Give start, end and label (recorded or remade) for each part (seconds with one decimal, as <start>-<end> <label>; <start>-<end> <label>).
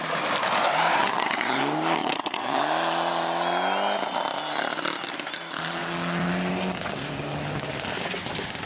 0.0-1.0 recorded; 1.0-1.6 remade; 1.6-2.0 recorded; 2.0-2.6 remade; 2.6-8.7 recorded